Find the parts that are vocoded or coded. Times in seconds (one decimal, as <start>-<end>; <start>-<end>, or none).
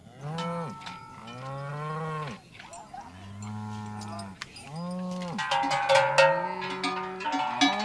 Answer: none